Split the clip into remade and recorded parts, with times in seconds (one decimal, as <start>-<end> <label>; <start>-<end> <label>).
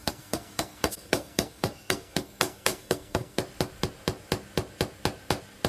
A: 0.0-3.4 remade; 3.4-5.7 recorded